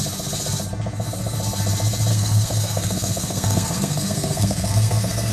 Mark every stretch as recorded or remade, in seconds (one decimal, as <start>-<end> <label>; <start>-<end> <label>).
0.0-2.1 recorded; 2.1-5.3 remade